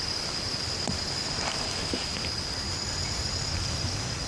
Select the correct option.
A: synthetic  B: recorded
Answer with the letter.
B